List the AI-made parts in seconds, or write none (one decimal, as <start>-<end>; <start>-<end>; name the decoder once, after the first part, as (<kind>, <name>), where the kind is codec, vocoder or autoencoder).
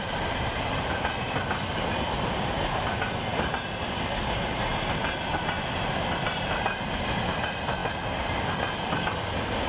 none